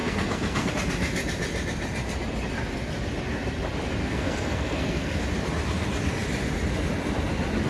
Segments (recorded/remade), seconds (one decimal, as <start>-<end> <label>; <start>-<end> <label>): 0.0-0.7 remade; 0.7-4.0 recorded; 4.0-5.2 remade; 5.2-7.7 recorded